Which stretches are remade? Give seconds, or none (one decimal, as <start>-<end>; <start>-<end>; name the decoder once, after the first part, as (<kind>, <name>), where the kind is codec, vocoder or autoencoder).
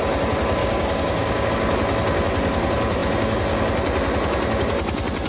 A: 0.6-1.5 (codec, DAC)